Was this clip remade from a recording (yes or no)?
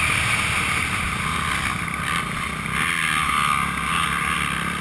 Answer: no